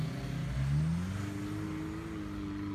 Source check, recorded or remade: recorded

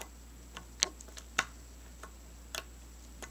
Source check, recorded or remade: recorded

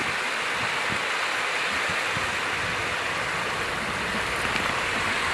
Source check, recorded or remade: recorded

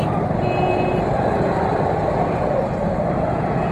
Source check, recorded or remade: recorded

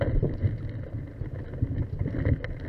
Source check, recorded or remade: recorded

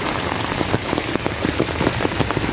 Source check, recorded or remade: remade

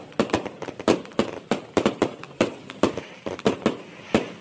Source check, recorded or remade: recorded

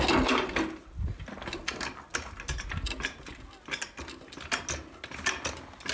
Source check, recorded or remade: recorded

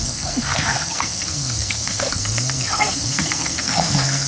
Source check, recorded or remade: remade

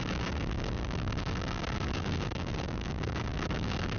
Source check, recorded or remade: remade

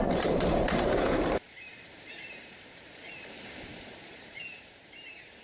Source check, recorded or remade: remade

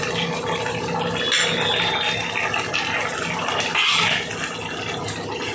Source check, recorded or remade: recorded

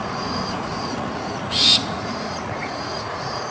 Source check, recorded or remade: remade